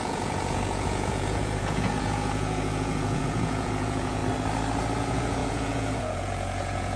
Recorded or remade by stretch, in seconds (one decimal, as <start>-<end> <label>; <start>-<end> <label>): 0.0-4.2 remade; 4.2-5.0 recorded; 5.0-7.0 remade